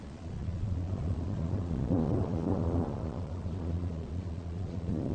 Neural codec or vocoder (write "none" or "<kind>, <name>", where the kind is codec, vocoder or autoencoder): vocoder, Vocos